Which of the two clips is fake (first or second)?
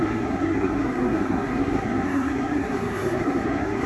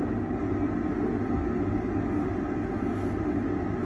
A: first